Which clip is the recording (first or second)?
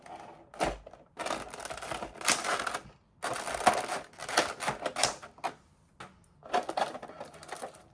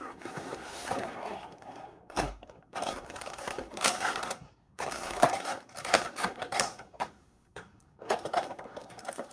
first